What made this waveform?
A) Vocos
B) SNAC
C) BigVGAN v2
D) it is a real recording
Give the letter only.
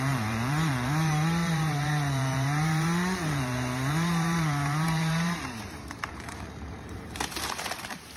C